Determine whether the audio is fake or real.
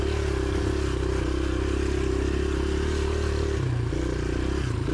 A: real